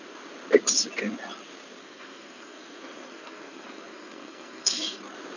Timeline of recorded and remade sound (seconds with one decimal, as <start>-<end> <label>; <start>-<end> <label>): 0.0-1.8 recorded; 1.8-5.0 remade; 5.0-5.4 recorded